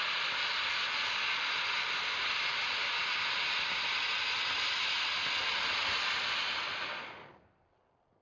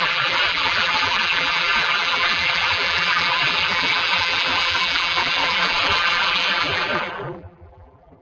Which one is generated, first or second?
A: second